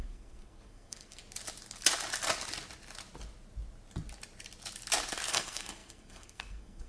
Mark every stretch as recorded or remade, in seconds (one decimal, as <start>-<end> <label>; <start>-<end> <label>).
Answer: 0.0-1.2 remade; 1.2-5.3 recorded; 5.3-6.9 remade